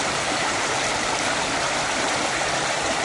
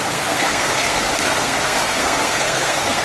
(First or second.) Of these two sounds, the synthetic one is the second